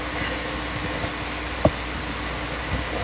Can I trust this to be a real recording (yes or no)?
yes